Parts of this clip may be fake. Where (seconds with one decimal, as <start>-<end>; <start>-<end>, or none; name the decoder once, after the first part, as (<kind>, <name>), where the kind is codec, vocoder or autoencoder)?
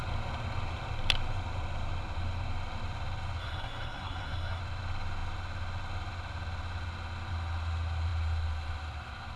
3.4-4.6 (codec, SNAC)